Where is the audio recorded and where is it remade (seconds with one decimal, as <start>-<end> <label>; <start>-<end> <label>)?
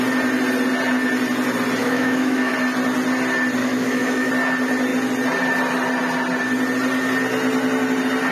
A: 0.0-1.8 recorded; 1.8-2.5 remade; 2.5-3.6 recorded; 3.6-4.3 remade; 4.3-8.3 recorded